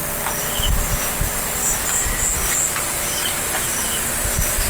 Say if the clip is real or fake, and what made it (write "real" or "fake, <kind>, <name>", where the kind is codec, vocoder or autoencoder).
real